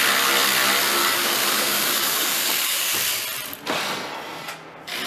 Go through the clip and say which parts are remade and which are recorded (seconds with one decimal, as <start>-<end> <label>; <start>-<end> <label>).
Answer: 0.0-1.0 recorded; 1.0-2.9 remade; 2.9-5.1 recorded